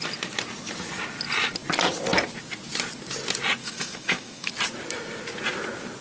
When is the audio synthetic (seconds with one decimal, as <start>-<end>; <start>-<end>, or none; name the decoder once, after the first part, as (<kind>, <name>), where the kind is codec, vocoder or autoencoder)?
3.6-4.5 (autoencoder, DAC-VAE)

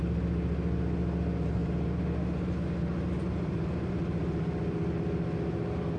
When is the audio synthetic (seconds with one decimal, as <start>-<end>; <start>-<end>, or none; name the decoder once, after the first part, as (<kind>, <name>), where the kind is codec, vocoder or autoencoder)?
none

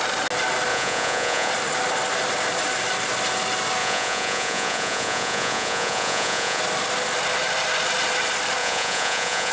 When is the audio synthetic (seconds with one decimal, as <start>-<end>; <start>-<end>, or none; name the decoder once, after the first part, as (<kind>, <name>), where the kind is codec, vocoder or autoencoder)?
0.7-1.5 (vocoder, Vocos); 3.8-6.6; 8.6-9.5

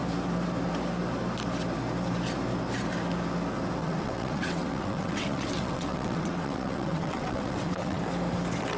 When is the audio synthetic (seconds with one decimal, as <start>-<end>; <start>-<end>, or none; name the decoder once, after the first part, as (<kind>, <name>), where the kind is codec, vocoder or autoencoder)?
3.8-8.0 (vocoder, WaveNeXt)

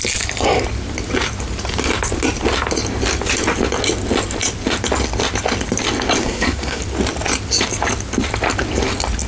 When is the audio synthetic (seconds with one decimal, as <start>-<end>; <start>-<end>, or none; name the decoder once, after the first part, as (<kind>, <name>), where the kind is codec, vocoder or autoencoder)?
6.2-6.8 (codec, SNAC)

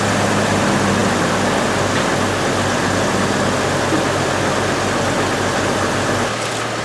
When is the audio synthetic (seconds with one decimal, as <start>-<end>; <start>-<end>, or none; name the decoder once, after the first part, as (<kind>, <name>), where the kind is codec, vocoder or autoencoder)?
none

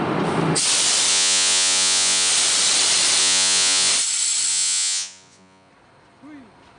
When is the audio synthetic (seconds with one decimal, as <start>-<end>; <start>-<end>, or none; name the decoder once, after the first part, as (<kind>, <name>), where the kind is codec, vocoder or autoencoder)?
1.1-2.3 (vocoder, Vocos); 3.2-3.9; 4.5-5.7

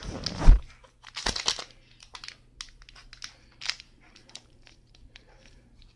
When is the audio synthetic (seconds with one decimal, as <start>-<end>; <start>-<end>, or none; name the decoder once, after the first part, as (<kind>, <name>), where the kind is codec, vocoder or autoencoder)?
3.6-6.0 (vocoder, BigVGAN v2)